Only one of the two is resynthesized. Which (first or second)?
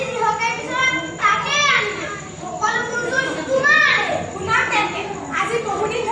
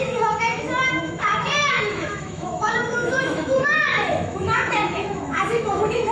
second